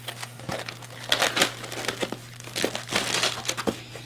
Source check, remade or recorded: recorded